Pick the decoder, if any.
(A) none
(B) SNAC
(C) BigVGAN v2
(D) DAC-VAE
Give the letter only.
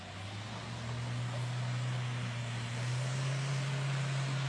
A